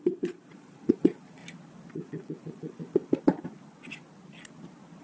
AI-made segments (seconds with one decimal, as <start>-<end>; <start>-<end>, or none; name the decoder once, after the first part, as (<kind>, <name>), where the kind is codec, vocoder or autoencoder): 0.0-1.4 (vocoder, Vocos); 1.9-3.0